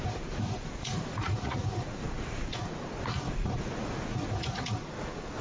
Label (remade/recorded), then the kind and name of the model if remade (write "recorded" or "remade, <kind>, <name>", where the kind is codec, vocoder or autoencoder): remade, vocoder, Vocos